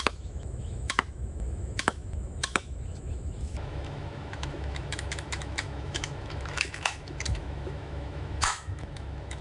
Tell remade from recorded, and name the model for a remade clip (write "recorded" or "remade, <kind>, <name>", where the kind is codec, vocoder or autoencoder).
remade, autoencoder, DAC-VAE